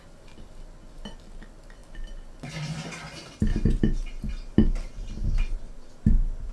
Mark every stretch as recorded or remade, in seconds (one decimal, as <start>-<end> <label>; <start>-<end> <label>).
0.0-6.5 recorded